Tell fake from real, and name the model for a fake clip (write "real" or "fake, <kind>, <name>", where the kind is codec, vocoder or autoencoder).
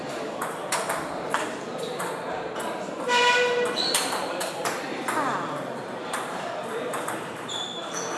fake, vocoder, BigVGAN v2